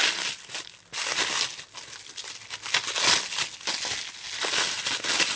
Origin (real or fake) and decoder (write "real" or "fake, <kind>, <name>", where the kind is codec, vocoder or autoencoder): real